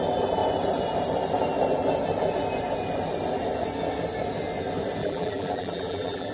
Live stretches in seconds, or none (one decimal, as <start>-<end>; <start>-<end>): 0.0-5.0